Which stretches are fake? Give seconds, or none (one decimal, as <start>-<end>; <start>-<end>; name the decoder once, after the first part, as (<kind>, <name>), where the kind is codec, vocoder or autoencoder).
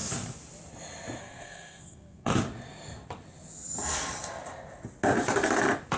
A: 1.2-2.3 (codec, SNAC)